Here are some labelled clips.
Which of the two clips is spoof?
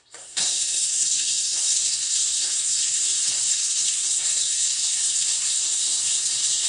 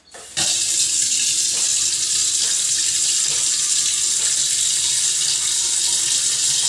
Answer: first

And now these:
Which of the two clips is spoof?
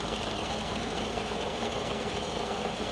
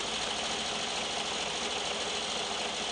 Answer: first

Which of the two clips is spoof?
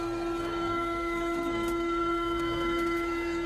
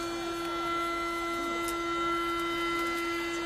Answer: first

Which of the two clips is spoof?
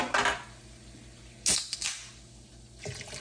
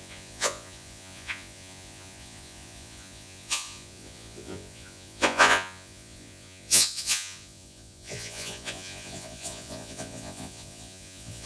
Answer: second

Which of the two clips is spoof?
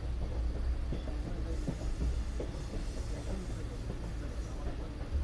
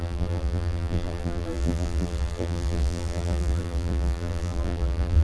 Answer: second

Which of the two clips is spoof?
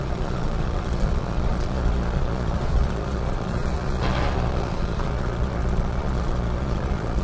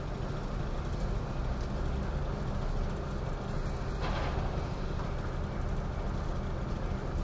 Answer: first